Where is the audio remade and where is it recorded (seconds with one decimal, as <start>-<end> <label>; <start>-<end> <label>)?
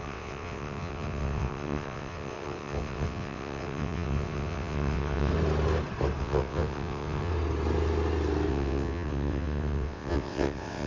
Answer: 0.0-5.3 remade; 5.3-6.2 recorded; 6.2-7.3 remade; 7.3-8.5 recorded; 8.5-10.9 remade